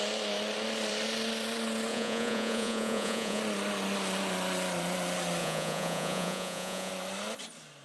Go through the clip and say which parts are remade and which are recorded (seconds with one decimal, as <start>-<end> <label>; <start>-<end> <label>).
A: 0.0-1.9 recorded; 1.9-3.4 remade; 3.4-5.4 recorded; 5.4-6.9 remade; 6.9-7.8 recorded